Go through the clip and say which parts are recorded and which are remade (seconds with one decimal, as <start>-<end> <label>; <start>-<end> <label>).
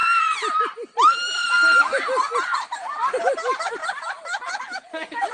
0.0-5.3 recorded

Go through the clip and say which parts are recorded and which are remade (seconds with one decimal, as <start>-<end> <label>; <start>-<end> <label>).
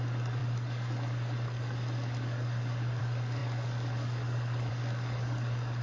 0.0-5.8 remade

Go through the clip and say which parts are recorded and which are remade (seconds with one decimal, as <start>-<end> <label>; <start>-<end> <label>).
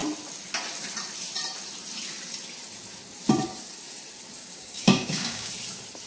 0.0-4.4 recorded; 4.4-5.5 remade; 5.5-6.1 recorded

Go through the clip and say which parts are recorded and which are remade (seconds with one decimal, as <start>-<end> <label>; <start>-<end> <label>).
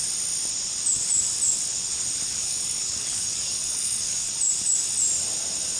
0.0-2.3 recorded; 2.3-4.3 remade; 4.3-5.8 recorded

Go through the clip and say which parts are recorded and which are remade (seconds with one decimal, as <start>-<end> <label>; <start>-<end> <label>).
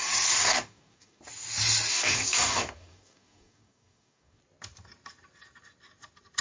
0.0-0.4 recorded; 0.4-1.2 remade; 1.2-1.9 recorded; 1.9-4.4 remade; 4.4-6.4 recorded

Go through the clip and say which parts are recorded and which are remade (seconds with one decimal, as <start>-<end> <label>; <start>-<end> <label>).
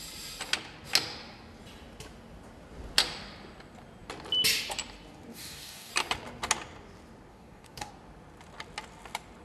0.0-5.3 recorded; 5.3-5.9 remade; 5.9-7.3 recorded; 7.3-7.9 remade; 7.9-9.4 recorded